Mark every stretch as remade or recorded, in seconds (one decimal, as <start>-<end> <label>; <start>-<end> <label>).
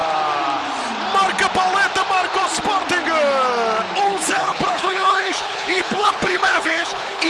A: 0.0-4.0 recorded; 4.0-7.3 remade